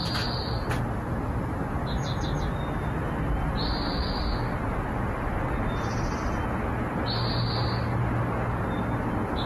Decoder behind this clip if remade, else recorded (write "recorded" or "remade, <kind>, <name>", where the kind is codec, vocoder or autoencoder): recorded